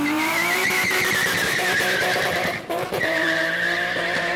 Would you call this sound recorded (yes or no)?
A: no